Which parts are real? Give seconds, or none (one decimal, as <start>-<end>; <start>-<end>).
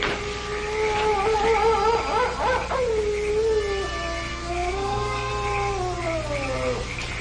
0.0-4.3; 5.3-7.2